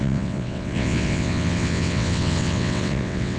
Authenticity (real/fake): fake